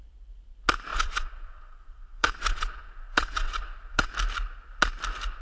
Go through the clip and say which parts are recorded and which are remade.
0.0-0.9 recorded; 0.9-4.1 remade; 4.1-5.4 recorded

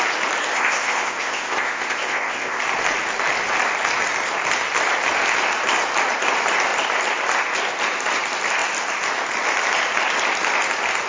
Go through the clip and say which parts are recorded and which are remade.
0.0-0.5 recorded; 0.5-2.6 remade; 2.6-11.1 recorded

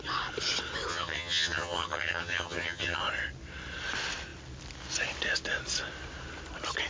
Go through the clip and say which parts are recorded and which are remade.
0.0-0.9 recorded; 0.9-3.0 remade; 3.0-6.9 recorded

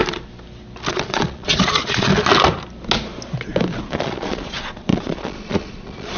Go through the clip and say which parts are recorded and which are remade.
0.0-0.9 recorded; 0.9-2.1 remade; 2.1-3.9 recorded; 3.9-6.2 remade

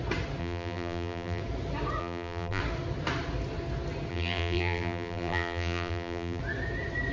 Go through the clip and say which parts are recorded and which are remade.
0.0-0.4 recorded; 0.4-1.4 remade; 1.4-2.0 recorded; 2.0-2.6 remade; 2.6-4.1 recorded; 4.1-6.4 remade; 6.4-7.1 recorded

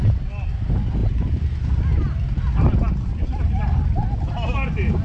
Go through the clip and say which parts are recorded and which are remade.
0.0-5.0 recorded

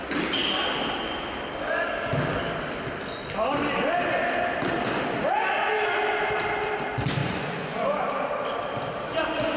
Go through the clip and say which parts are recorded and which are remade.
0.0-7.2 recorded; 7.2-8.0 remade; 8.0-9.6 recorded